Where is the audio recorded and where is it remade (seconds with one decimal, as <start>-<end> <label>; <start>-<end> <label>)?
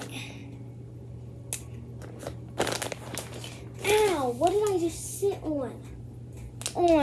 0.0-7.0 recorded